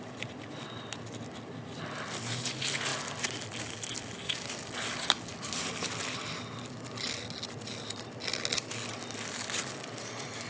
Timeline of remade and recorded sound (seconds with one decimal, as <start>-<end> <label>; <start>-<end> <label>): 0.0-10.5 recorded